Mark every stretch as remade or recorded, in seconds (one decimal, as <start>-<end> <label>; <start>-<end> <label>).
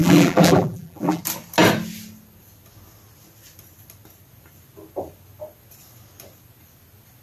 0.0-1.2 remade; 1.2-7.2 recorded